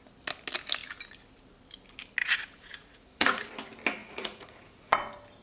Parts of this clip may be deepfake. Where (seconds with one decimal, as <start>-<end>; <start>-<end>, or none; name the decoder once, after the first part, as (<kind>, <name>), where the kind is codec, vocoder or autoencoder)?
2.2-3.4 (vocoder, Vocos); 4.0-4.9